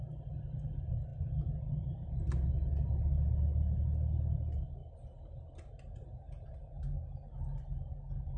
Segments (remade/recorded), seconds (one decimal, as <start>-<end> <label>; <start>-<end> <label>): 0.0-8.4 recorded